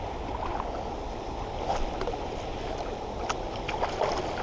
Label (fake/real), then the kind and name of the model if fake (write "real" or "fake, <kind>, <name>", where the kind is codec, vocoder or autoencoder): real